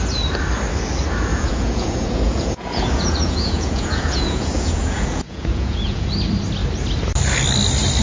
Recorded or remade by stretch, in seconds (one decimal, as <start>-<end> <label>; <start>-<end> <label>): 0.0-1.3 recorded; 1.3-6.1 remade; 6.1-8.0 recorded